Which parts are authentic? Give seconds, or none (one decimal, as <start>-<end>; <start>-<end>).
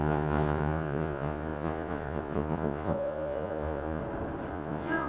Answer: 4.0-4.5